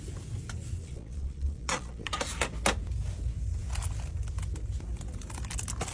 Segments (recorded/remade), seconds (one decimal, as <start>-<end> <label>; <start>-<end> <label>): 0.0-0.8 recorded; 0.8-2.1 remade; 2.1-5.9 recorded